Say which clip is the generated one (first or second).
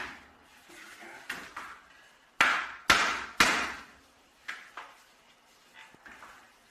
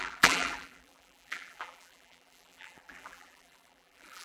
second